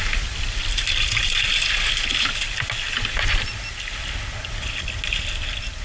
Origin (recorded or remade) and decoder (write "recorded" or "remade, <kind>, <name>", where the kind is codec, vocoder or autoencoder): recorded